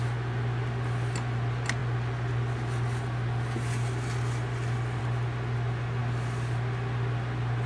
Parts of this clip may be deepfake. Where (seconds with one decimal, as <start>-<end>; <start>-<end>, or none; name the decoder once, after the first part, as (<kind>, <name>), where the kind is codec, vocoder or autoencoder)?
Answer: none